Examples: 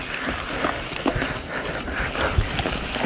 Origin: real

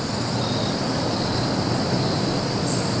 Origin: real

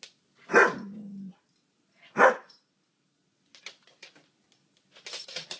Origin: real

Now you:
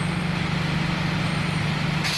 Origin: real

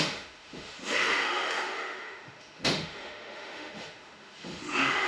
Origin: fake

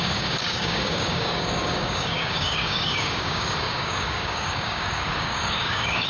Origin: fake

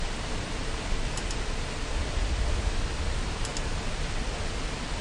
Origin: real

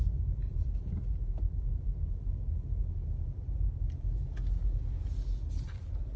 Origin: real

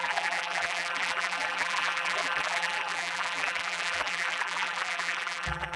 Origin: fake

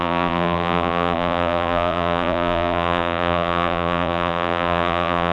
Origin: fake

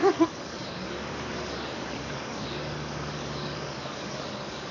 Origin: fake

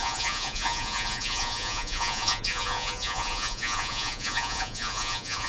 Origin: fake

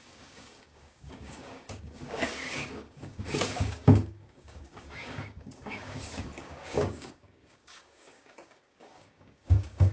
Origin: fake